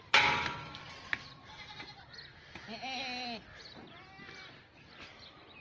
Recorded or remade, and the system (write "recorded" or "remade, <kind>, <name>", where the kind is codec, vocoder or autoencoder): recorded